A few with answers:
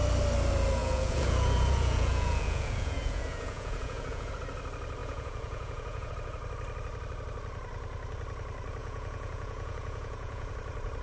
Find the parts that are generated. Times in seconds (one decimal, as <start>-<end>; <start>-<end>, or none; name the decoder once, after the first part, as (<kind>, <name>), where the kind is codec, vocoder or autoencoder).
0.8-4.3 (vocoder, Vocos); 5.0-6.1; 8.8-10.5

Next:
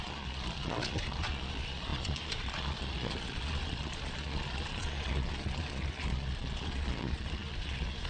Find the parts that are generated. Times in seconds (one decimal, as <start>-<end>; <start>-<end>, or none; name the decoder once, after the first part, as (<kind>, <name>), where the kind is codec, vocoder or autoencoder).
0.0-8.1 (vocoder, Vocos)

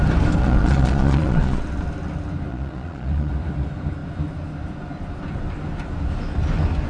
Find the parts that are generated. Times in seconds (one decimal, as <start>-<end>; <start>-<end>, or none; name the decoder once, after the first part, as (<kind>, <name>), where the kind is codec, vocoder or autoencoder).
0.4-1.6 (vocoder, Vocos); 2.5-3.3